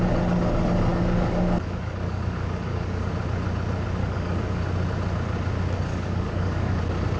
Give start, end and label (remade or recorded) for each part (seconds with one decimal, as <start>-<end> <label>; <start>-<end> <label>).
0.0-0.9 recorded; 0.9-3.1 remade; 3.1-4.0 recorded; 4.0-4.6 remade; 4.6-5.9 recorded; 5.9-6.8 remade; 6.8-7.2 recorded